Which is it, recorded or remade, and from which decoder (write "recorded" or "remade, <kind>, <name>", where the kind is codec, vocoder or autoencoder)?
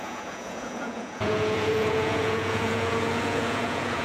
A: remade, vocoder, Vocos